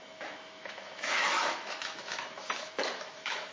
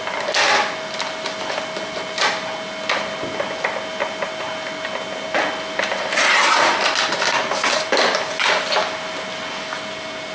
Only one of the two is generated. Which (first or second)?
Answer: first